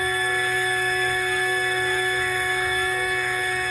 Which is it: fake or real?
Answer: fake